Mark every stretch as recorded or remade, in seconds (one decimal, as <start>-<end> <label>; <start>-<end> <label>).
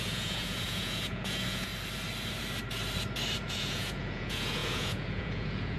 0.0-1.7 remade; 1.7-3.5 recorded; 3.5-5.8 remade